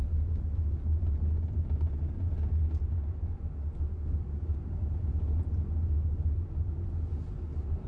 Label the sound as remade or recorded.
recorded